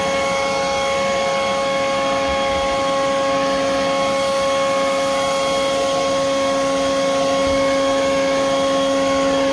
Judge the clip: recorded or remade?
recorded